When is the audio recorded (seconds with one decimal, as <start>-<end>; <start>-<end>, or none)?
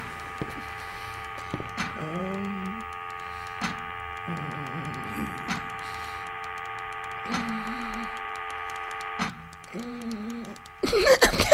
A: 2.2-4.8